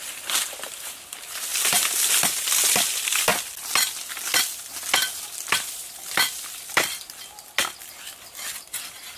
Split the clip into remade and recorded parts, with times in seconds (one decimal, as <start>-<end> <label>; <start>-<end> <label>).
0.0-9.2 recorded

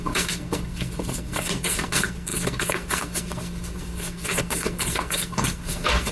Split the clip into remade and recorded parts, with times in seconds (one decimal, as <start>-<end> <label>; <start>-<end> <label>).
0.0-6.1 remade

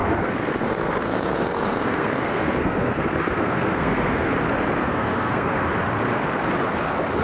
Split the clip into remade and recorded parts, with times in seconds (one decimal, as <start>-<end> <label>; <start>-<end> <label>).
0.0-4.3 remade; 4.3-4.8 recorded; 4.8-5.7 remade; 5.7-7.2 recorded